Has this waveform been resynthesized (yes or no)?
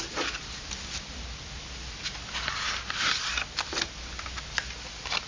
no